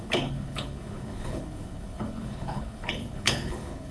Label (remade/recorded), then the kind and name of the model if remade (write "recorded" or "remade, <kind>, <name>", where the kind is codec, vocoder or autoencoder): remade, codec, HILCodec